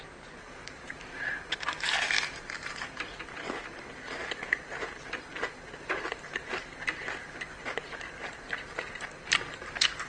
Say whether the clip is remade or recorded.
remade